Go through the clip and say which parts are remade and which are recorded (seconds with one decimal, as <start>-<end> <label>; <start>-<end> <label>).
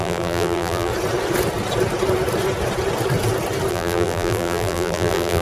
0.0-0.9 remade; 0.9-3.7 recorded; 3.7-5.4 remade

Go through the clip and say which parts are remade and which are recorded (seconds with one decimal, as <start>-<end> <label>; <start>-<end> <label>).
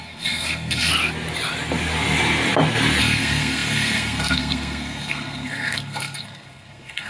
0.0-0.9 remade; 0.9-3.0 recorded; 3.0-7.1 remade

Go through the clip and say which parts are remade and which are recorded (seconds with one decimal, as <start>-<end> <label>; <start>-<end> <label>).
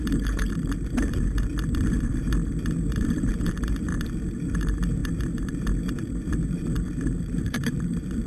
0.0-1.5 remade; 1.5-2.9 recorded; 2.9-3.9 remade; 3.9-4.6 recorded; 4.6-5.0 remade; 5.0-6.2 recorded; 6.2-8.3 remade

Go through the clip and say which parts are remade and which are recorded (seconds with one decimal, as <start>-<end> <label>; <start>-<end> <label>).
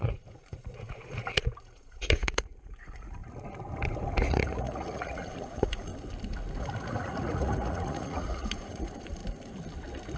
0.0-3.2 remade; 3.2-4.3 recorded; 4.3-5.9 remade; 5.9-6.6 recorded; 6.6-9.2 remade; 9.2-10.2 recorded